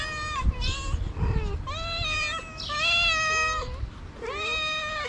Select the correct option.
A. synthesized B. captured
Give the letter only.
B